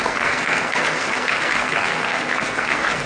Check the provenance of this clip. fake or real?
fake